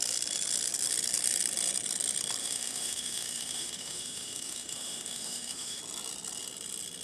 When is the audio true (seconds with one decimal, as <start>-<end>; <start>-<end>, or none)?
0.0-2.4; 5.8-7.0